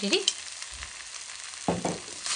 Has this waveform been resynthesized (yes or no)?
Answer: no